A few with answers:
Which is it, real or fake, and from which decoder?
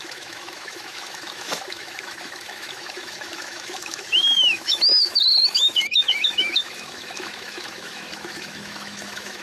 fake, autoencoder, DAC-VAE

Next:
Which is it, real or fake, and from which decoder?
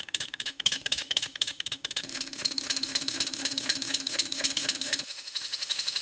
fake, autoencoder, DAC-VAE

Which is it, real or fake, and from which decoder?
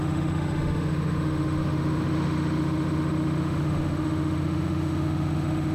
fake, autoencoder, DAC-VAE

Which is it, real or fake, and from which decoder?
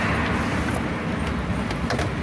real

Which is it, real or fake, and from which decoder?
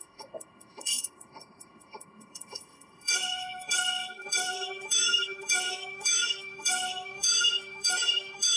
fake, autoencoder, DAC-VAE